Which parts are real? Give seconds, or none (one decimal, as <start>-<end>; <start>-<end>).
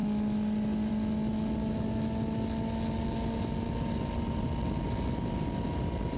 0.0-6.2